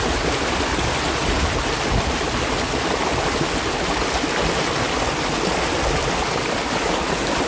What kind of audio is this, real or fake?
real